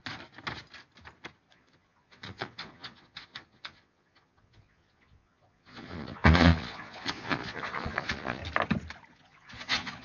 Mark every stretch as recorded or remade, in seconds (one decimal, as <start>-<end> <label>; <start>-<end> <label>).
0.0-1.5 recorded; 1.5-8.4 remade; 8.4-9.1 recorded; 9.1-10.0 remade